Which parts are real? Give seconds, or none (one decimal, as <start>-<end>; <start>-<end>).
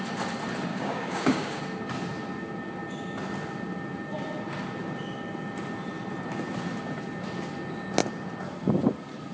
0.0-0.7; 1.6-9.3